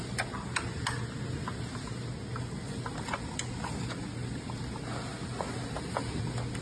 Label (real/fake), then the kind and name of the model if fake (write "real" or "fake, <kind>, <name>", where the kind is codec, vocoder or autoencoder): real